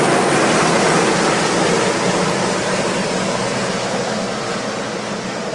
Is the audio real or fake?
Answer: real